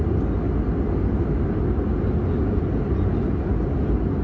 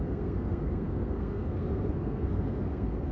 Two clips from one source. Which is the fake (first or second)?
second